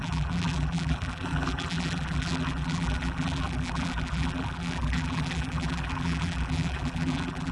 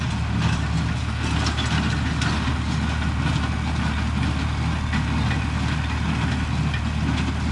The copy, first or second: first